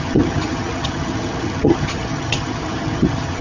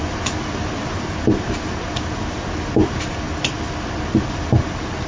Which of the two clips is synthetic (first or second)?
first